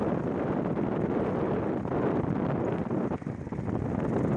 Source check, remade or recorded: recorded